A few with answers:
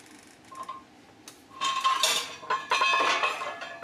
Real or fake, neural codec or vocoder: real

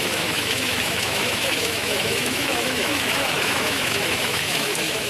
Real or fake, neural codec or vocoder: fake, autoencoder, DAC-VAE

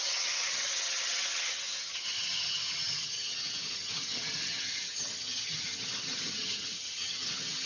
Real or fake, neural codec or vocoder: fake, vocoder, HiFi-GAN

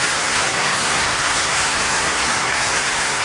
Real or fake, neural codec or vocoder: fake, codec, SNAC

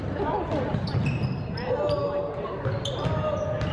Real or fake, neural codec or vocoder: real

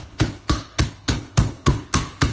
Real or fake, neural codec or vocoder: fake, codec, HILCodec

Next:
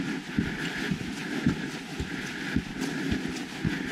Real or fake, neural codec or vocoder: real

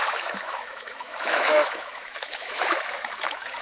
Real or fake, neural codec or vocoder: fake, autoencoder, DAC-VAE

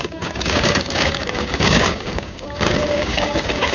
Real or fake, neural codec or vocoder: fake, codec, DAC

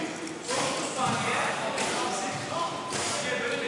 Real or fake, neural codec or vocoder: real